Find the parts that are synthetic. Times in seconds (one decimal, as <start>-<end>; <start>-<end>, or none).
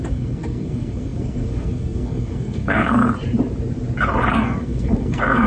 0.0-3.0; 4.3-5.5